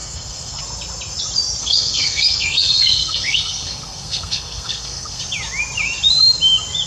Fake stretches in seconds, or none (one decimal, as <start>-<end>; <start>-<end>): 0.0-0.6; 1.6-5.2